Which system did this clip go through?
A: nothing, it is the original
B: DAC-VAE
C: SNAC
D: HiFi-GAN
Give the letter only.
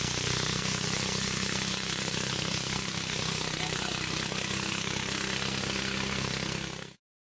C